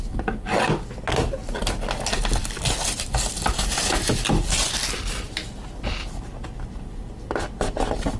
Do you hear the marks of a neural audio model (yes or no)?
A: no